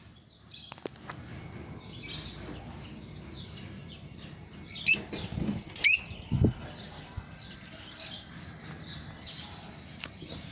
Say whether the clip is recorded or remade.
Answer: recorded